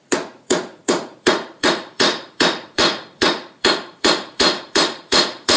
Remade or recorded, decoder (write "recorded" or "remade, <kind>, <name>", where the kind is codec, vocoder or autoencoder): remade, vocoder, Vocos